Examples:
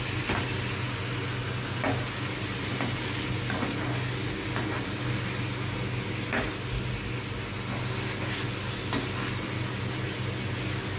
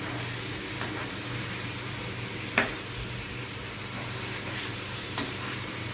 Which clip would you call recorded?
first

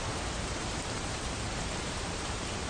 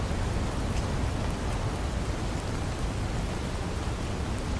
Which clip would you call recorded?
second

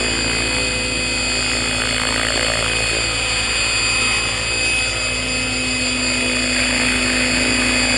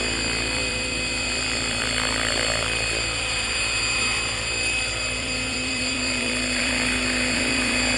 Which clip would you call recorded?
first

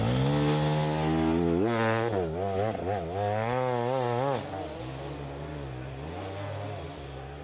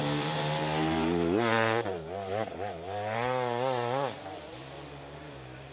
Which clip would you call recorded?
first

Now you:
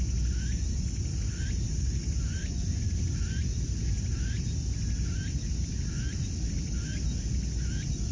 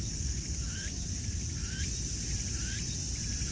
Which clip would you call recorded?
first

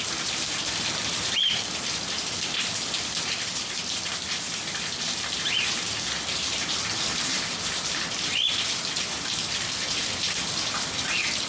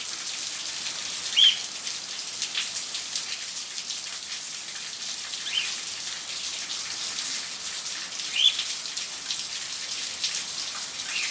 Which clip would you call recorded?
second